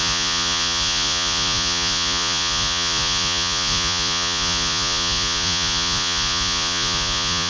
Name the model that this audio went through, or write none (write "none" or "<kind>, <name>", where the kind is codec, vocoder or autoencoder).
vocoder, Vocos